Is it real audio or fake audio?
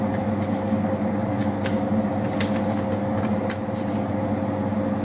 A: real